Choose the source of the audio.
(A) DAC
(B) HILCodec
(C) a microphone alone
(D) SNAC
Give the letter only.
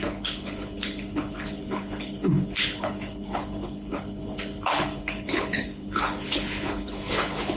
B